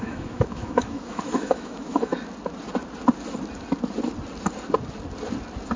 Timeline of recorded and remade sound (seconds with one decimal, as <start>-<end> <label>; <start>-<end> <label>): 0.0-2.1 remade; 2.1-5.8 recorded